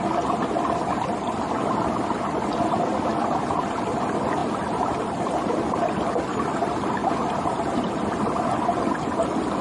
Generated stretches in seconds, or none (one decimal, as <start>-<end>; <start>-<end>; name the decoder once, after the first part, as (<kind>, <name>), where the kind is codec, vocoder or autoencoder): 4.4-5.8 (vocoder, BigVGAN v2)